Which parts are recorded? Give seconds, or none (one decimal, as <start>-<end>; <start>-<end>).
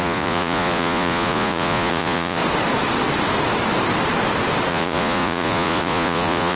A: 2.4-4.7